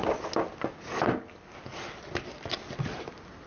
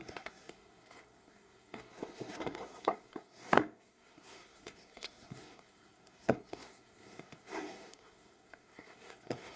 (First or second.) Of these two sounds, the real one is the first